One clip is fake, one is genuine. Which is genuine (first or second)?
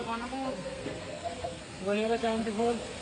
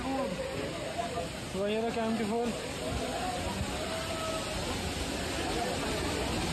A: second